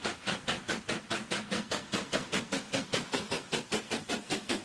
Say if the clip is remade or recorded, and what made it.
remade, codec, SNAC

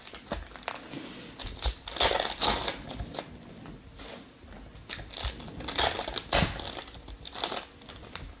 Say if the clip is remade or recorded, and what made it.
recorded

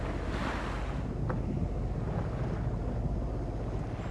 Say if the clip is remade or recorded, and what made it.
recorded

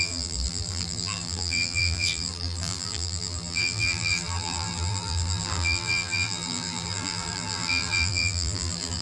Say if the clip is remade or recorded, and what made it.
remade, vocoder, BigVGAN v2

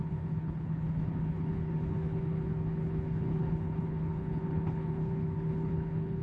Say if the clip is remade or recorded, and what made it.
remade, codec, HILCodec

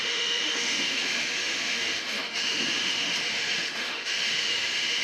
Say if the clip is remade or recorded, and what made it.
remade, autoencoder, DAC-VAE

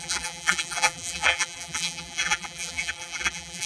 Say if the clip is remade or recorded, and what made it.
remade, vocoder, BigVGAN v2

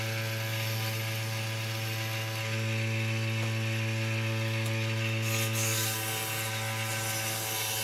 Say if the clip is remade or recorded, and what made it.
recorded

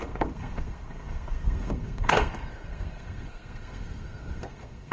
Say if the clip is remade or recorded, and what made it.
remade, codec, SNAC